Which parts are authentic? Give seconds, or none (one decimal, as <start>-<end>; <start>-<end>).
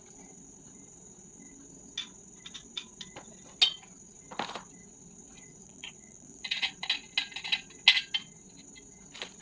0.0-5.6; 6.7-9.4